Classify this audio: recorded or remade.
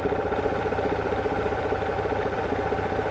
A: remade